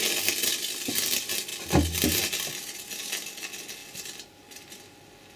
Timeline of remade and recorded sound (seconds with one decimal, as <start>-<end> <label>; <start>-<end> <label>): 0.0-3.8 recorded; 3.8-4.4 remade; 4.4-5.4 recorded